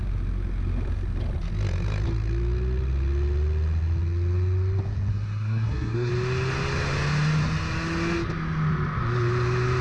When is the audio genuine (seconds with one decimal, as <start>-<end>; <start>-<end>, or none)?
0.0-5.1; 6.1-9.8